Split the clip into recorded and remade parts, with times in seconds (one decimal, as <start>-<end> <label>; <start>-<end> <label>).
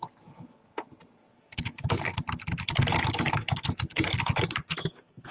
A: 0.0-0.7 remade; 0.7-1.3 recorded; 1.3-2.1 remade; 2.1-3.0 recorded; 3.0-5.3 remade